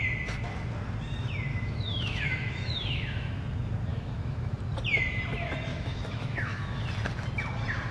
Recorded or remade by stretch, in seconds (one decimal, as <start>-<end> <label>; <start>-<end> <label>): 0.0-1.5 recorded; 1.5-3.4 remade; 3.4-3.9 recorded; 3.9-4.5 remade; 4.5-5.7 recorded; 5.7-6.8 remade; 6.8-7.9 recorded